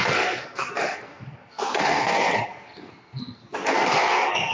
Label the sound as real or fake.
fake